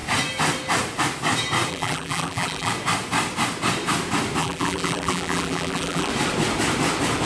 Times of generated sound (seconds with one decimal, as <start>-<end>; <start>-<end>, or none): 1.7-2.7; 4.4-6.1